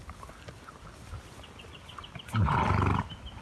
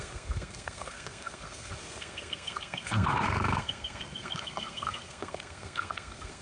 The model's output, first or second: second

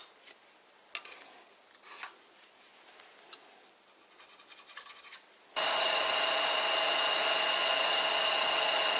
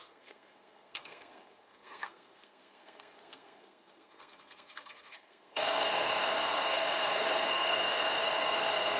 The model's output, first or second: second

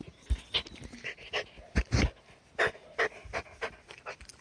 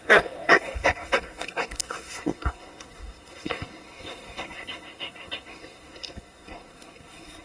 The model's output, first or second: second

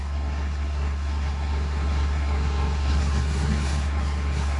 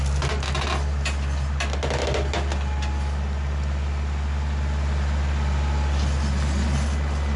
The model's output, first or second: first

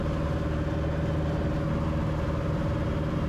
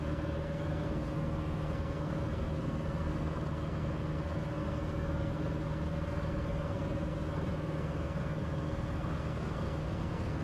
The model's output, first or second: second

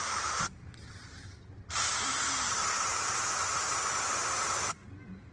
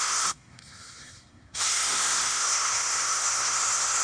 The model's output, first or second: second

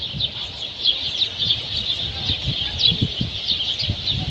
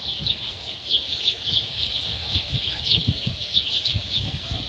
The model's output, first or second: second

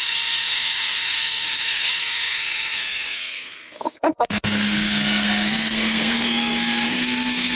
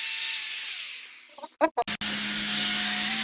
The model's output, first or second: first